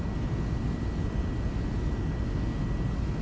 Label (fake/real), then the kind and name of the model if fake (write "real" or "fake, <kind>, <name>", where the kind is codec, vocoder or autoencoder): real